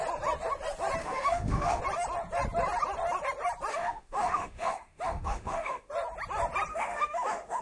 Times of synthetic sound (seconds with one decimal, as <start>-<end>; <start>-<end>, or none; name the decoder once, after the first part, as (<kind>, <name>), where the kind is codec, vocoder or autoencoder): 1.0-1.8 (autoencoder, DAC-VAE); 3.7-5.9; 6.7-7.6